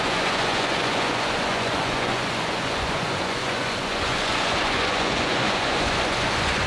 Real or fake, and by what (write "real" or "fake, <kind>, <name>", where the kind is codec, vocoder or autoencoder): fake, vocoder, Vocos